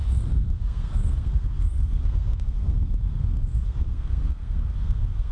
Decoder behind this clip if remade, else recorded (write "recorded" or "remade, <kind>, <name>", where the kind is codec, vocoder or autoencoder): remade, codec, SNAC